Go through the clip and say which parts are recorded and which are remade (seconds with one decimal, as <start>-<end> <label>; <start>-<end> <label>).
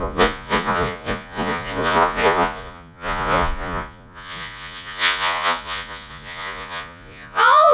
0.0-7.7 remade